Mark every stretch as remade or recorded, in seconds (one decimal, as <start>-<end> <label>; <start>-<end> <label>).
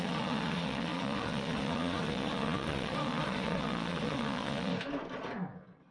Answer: 0.0-4.7 remade; 4.7-5.9 recorded